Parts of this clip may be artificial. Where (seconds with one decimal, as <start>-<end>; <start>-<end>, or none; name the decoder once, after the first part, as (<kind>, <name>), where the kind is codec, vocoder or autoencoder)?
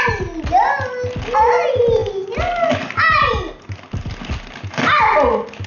none